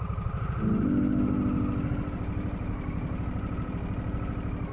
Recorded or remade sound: recorded